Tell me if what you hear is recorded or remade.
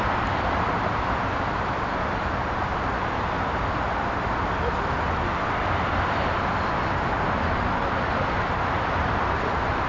recorded